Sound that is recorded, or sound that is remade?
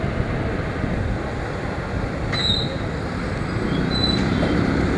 recorded